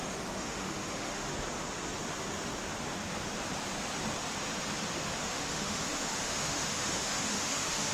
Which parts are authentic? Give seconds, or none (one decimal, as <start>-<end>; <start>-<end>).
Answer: 1.3-5.2